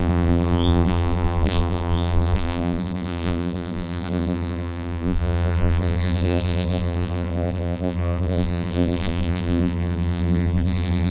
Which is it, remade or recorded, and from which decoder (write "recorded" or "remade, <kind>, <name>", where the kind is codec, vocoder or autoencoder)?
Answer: remade, vocoder, BigVGAN v2